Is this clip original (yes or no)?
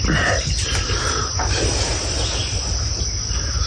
yes